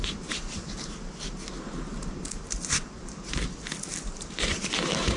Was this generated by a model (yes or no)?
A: yes